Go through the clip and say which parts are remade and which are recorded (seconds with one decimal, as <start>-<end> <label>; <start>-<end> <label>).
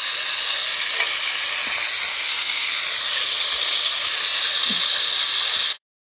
0.0-2.1 recorded; 2.1-2.8 remade; 2.8-6.1 recorded